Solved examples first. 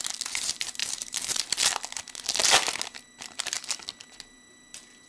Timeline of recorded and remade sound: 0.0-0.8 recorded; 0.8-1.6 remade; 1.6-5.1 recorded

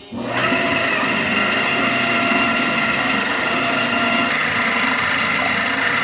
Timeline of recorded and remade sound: 0.0-0.4 recorded; 0.4-4.0 remade; 4.0-4.4 recorded; 4.4-5.4 remade; 5.4-6.0 recorded

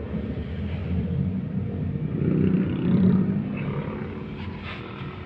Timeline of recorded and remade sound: 0.0-0.8 recorded; 0.8-4.0 remade; 4.0-5.3 recorded

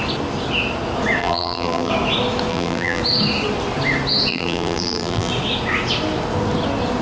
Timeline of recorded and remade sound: 0.0-1.2 recorded; 1.2-1.9 remade; 1.9-2.5 recorded; 2.5-3.0 remade; 3.0-4.3 recorded; 4.3-5.3 remade; 5.3-7.0 recorded

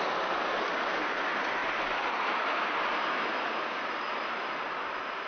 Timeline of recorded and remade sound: 0.0-5.3 recorded

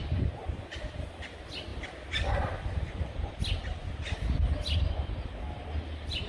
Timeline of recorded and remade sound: 0.0-0.9 remade; 0.9-6.3 recorded